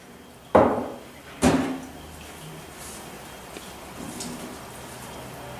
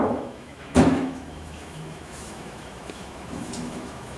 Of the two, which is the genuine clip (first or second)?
first